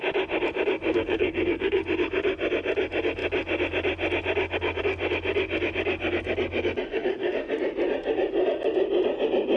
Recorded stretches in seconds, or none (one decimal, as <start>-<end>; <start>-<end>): 0.0-0.9; 1.8-6.9; 7.5-9.6